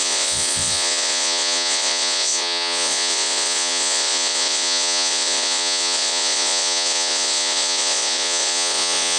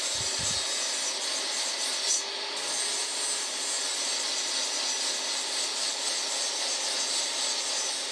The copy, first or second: first